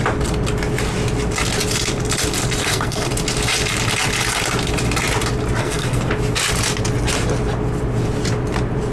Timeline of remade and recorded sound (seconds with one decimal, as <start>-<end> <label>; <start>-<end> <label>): 0.0-2.6 recorded; 2.6-3.1 remade; 3.1-5.6 recorded; 5.6-6.1 remade; 6.1-8.9 recorded